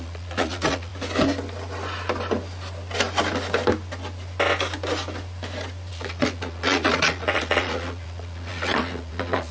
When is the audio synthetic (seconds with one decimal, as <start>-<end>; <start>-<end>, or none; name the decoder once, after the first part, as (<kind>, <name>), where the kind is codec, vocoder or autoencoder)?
0.0-0.9 (vocoder, Vocos); 5.9-9.5